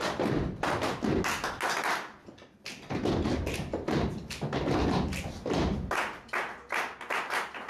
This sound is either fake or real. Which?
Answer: real